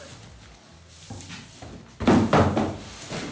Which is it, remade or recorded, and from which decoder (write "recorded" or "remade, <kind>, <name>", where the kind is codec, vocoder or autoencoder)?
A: recorded